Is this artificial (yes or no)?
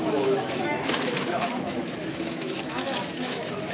yes